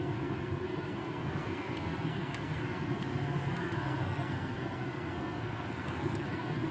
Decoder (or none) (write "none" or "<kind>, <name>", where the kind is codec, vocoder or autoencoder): codec, SNAC